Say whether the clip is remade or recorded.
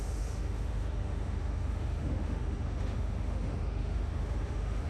remade